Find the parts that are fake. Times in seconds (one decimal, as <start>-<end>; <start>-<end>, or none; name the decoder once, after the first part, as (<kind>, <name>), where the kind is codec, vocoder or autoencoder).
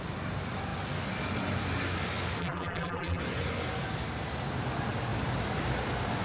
2.4-3.2 (vocoder, BigVGAN v2)